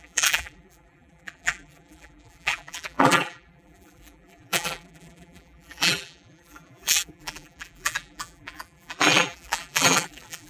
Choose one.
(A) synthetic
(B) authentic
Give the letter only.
A